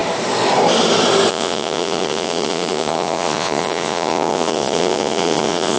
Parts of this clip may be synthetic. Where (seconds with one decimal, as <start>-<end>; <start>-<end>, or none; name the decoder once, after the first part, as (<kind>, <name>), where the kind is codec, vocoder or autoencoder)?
1.3-5.8 (vocoder, Vocos)